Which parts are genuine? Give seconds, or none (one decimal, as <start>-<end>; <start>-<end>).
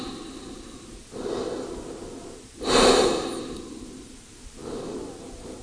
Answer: 0.0-5.6